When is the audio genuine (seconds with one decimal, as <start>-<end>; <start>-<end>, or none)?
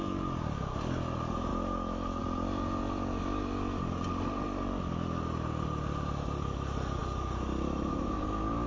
0.0-1.5; 2.2-8.7